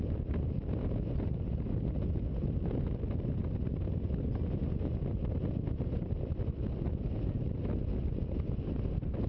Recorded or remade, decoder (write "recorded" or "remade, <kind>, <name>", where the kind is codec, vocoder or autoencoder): recorded